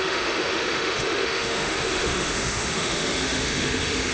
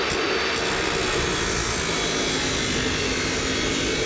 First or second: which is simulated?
first